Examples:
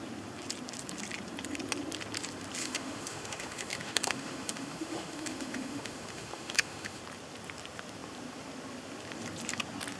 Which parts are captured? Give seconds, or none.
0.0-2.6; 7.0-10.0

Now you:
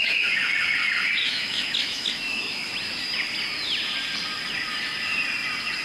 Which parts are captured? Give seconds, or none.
0.4-1.2; 2.7-5.8

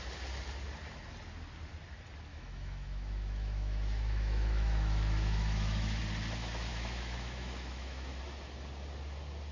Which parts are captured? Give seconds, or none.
0.0-2.3; 6.0-6.7; 8.2-9.5